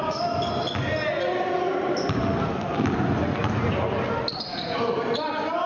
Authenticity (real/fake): real